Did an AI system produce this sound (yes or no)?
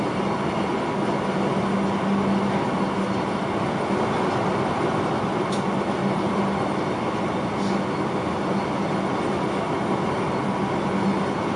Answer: no